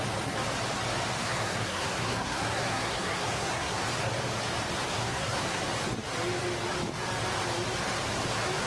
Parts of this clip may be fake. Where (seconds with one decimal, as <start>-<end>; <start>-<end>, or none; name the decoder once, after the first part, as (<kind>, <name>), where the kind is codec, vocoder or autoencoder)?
1.2-3.8 (codec, SNAC); 4.9-5.6